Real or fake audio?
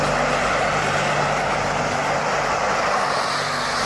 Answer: real